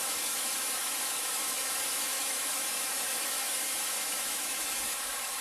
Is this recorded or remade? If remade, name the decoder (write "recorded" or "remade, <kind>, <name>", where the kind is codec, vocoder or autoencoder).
remade, autoencoder, DAC-VAE